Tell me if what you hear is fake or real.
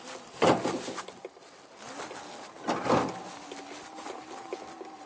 real